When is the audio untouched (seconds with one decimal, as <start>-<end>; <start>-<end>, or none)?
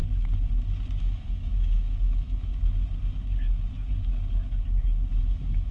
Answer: 0.0-1.0; 2.5-5.2